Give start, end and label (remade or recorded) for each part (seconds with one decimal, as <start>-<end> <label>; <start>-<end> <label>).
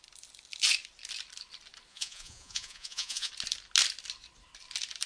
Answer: 0.0-1.9 recorded; 1.9-3.3 remade; 3.3-5.1 recorded